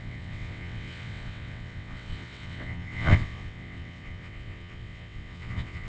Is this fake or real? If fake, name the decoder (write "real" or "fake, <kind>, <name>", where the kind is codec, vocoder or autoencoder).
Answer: fake, vocoder, WaveNeXt